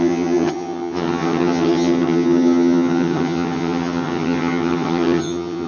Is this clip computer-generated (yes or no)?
yes